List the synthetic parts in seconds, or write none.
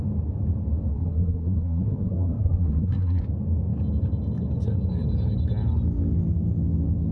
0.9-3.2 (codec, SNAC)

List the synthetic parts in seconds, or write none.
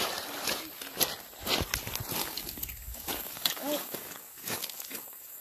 2.2-5.4 (codec, DAC)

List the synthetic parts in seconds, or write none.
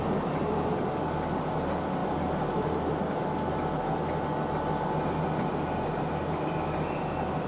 none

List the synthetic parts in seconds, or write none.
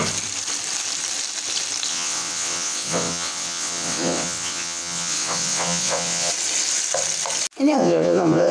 1.9-6.3 (vocoder, WaveNeXt); 7.8-8.5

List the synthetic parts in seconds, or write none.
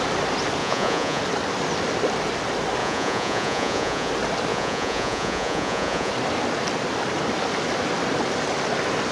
0.6-1.2 (vocoder, Vocos); 2.8-4.1; 4.5-6.1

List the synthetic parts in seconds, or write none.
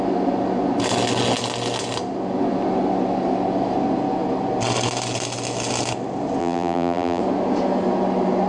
6.4-7.2 (vocoder, BigVGAN v2)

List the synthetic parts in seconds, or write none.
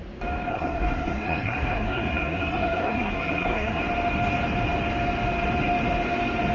0.5-3.8 (codec, SNAC)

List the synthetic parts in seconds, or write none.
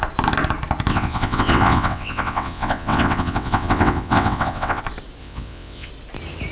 0.9-4.8 (vocoder, WaveNeXt); 5.2-5.9